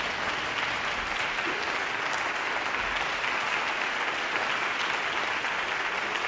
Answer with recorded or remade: recorded